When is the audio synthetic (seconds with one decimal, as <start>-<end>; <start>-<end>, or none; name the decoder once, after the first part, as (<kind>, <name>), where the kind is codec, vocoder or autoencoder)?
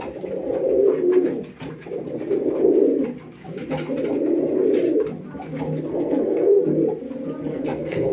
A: 5.9-6.6 (codec, SNAC); 7.5-8.1